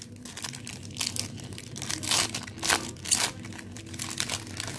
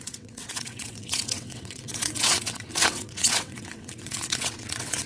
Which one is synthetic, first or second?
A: second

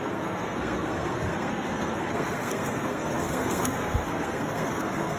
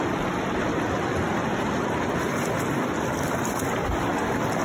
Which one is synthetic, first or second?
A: first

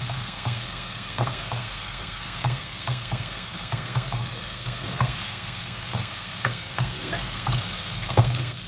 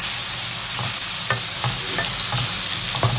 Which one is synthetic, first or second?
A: first